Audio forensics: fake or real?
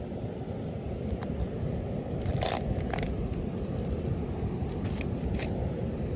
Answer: real